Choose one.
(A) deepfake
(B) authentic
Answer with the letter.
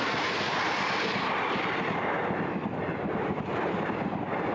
B